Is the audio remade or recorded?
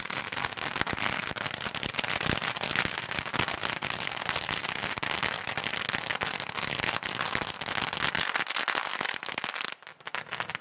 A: recorded